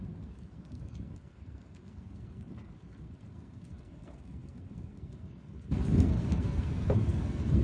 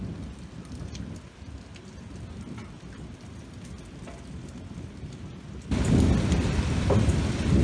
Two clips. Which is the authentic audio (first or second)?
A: second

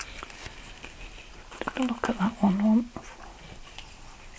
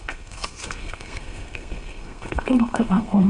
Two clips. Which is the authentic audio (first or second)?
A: first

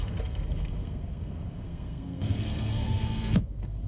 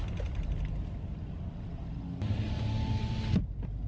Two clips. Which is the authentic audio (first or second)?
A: second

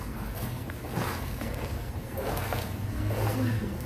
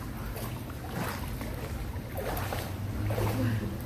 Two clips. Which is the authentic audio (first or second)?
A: second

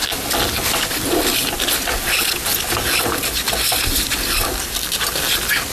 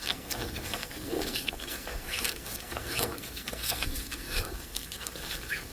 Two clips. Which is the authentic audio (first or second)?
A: first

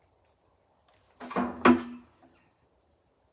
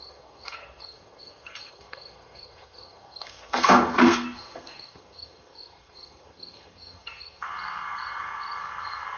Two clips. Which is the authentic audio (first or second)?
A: first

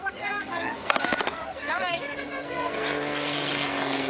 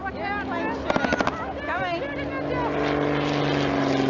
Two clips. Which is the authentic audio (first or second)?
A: second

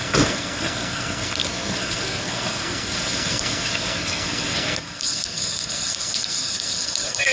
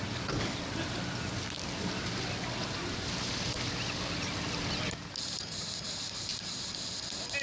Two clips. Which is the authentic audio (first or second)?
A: second